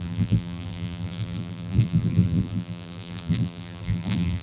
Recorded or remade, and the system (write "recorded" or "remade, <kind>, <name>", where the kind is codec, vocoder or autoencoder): remade, vocoder, BigVGAN v2